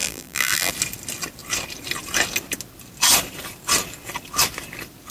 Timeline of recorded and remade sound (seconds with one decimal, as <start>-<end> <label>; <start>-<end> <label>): 0.0-0.7 remade; 0.7-5.1 recorded